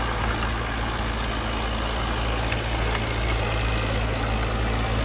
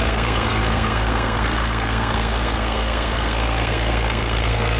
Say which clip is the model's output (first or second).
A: second